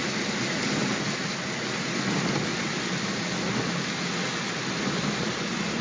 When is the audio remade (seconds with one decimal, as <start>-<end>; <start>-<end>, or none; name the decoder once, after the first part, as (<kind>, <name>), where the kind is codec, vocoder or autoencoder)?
none